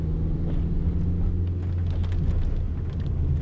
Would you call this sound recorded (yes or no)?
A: yes